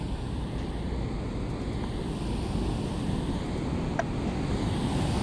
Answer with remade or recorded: recorded